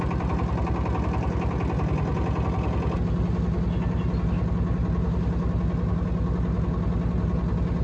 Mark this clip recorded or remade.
recorded